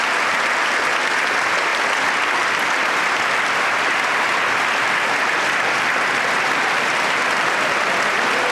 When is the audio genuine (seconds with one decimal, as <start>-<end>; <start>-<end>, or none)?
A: 0.0-8.5